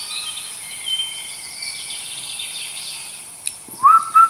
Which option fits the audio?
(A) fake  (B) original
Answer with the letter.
B